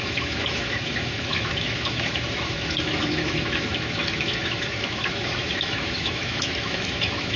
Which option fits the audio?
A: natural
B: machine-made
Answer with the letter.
B